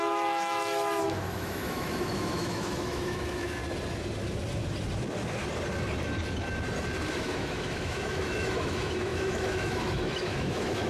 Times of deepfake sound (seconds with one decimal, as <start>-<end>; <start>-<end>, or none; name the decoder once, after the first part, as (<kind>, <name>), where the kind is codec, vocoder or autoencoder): 0.0-3.6 (autoencoder, DAC-VAE); 7.1-10.9

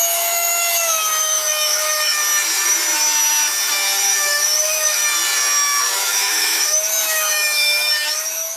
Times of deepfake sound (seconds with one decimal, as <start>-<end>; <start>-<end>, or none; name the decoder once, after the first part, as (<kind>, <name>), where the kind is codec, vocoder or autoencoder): 0.0-2.2 (autoencoder, DAC-VAE); 4.1-5.0; 5.8-8.6

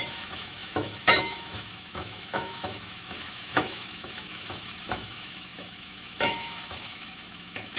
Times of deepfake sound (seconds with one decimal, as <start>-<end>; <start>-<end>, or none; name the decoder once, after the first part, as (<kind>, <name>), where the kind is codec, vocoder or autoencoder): 0.0-7.8 (autoencoder, DAC-VAE)

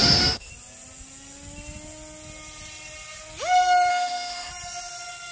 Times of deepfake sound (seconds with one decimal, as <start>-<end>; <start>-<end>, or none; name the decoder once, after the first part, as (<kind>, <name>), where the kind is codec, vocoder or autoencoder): 0.0-0.5 (autoencoder, DAC-VAE); 3.9-4.5

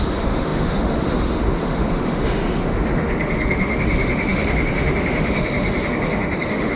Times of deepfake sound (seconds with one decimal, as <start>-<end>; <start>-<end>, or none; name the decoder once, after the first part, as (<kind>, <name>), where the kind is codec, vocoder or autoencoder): 0.0-6.8 (autoencoder, DAC-VAE)

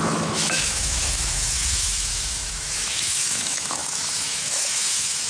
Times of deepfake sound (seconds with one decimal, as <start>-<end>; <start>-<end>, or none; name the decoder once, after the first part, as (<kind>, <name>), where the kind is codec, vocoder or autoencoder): 0.0-5.3 (autoencoder, DAC-VAE)

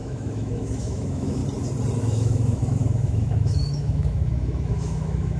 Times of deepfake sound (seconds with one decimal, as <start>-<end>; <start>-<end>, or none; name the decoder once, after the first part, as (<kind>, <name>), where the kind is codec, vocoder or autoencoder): 0.0-1.4 (autoencoder, DAC-VAE); 2.0-5.4